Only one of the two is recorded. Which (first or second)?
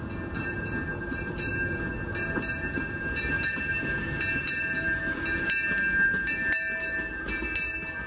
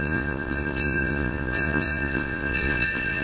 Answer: first